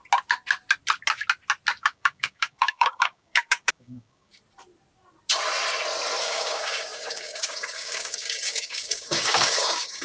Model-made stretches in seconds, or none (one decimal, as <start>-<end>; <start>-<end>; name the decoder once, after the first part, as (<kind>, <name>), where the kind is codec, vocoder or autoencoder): 1.8-4.3 (codec, DAC); 6.2-10.0